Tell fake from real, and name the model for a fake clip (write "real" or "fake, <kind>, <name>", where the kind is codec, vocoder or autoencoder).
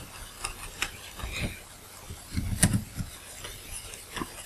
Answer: real